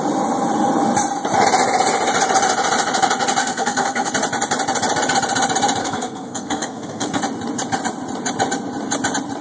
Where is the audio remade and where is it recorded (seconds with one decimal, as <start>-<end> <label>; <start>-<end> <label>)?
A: 0.0-3.4 recorded; 3.4-4.1 remade; 4.1-5.8 recorded; 5.8-7.2 remade; 7.2-9.4 recorded